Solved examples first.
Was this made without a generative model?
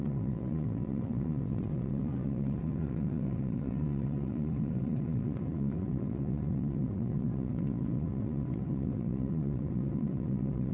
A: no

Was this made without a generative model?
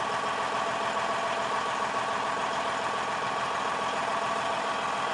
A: yes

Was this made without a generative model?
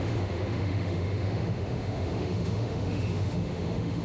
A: no